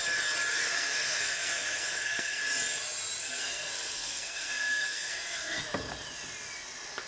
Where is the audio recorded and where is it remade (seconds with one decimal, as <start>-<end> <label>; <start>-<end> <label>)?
0.0-0.5 recorded; 0.5-2.4 remade; 2.4-3.2 recorded; 3.2-5.6 remade; 5.6-7.1 recorded